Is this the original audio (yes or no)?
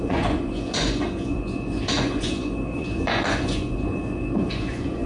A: no